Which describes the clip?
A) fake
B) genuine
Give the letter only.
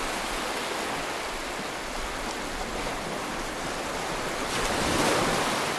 B